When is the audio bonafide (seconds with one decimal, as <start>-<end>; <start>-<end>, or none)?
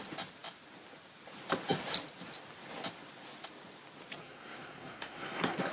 0.0-4.2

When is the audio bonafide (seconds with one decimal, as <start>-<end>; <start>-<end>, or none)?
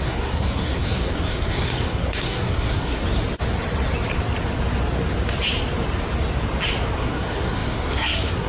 3.0-7.0